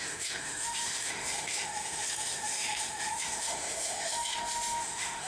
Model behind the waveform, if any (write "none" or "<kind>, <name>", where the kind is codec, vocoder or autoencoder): autoencoder, DAC-VAE